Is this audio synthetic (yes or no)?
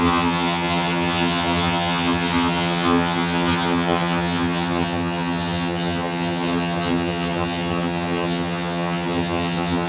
yes